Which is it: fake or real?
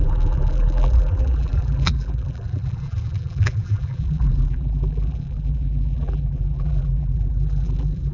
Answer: fake